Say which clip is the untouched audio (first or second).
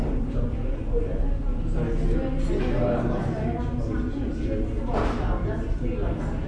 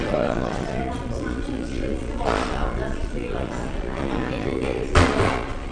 first